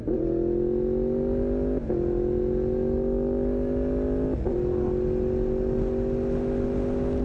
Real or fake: real